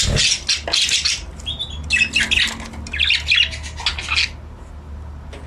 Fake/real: real